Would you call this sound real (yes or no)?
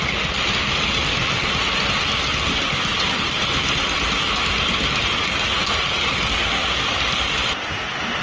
yes